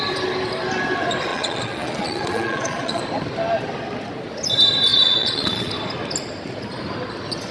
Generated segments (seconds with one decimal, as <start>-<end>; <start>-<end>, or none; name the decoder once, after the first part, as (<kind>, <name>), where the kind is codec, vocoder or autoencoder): 1.3-3.0 (vocoder, Vocos); 4.9-5.7